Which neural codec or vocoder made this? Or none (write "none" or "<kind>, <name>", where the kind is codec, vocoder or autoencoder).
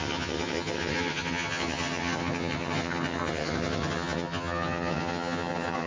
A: vocoder, HiFi-GAN